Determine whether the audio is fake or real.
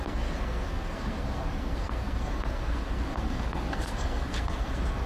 fake